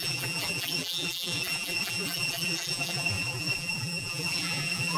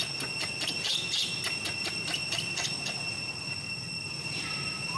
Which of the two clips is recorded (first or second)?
second